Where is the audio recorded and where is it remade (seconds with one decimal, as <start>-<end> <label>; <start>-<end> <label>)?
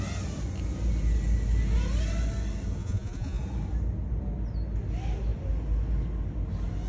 0.0-2.8 recorded; 2.8-3.4 remade; 3.4-6.9 recorded